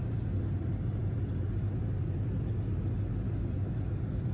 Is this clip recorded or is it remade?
recorded